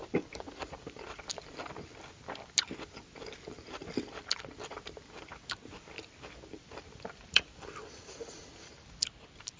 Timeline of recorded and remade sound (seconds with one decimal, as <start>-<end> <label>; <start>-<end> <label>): 0.0-1.3 remade; 1.3-6.5 recorded; 6.5-9.6 remade